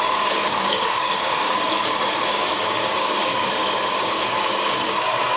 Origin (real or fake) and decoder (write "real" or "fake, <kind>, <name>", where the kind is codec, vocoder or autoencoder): fake, codec, DAC